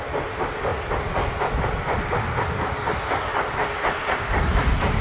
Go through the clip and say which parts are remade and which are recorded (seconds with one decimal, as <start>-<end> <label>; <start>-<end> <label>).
0.0-5.0 recorded